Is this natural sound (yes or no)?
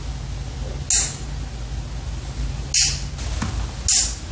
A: yes